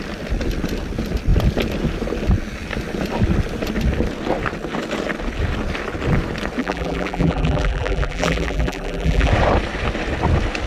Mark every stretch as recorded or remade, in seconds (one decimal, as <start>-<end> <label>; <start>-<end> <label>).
0.0-6.6 recorded; 6.6-9.3 remade; 9.3-10.7 recorded